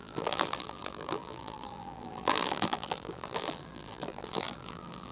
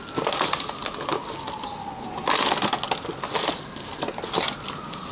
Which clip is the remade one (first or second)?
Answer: first